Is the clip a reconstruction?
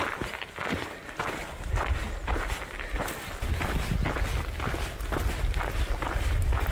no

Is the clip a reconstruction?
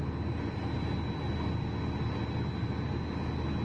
no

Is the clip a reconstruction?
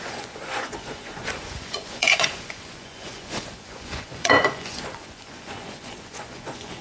yes